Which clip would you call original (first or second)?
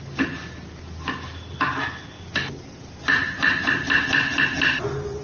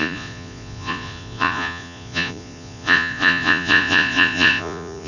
first